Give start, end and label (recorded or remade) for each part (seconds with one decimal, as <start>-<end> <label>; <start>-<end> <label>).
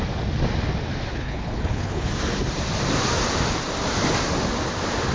0.0-1.1 recorded; 1.1-2.1 remade; 2.1-5.1 recorded